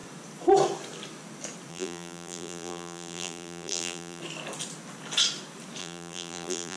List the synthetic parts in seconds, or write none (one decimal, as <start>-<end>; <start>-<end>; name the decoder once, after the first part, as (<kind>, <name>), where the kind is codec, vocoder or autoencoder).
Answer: 1.7-4.2 (vocoder, BigVGAN v2); 5.8-6.8